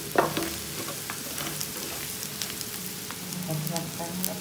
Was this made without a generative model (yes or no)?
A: yes